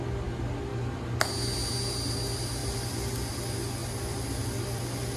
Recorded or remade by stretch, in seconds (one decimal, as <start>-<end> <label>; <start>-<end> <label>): 0.0-3.8 recorded; 3.8-4.8 remade; 4.8-5.2 recorded